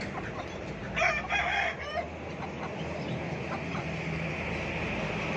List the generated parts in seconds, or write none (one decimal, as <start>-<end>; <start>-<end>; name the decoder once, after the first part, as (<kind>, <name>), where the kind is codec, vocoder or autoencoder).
none